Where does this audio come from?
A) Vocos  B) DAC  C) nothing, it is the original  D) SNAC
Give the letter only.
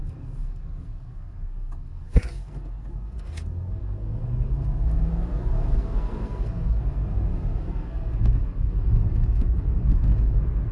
D